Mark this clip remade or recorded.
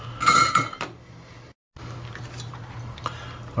recorded